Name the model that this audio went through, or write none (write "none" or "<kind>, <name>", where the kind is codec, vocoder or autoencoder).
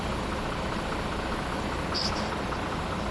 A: none